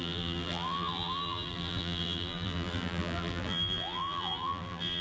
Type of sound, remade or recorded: remade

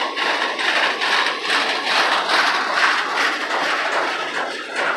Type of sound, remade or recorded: recorded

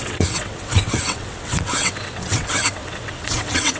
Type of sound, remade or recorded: remade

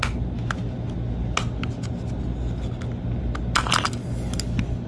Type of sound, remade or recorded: recorded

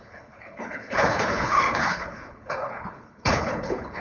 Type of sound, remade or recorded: remade